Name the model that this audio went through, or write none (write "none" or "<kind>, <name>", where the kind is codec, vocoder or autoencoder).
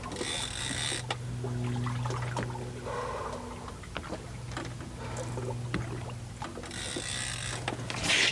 none